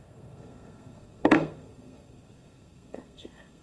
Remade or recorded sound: remade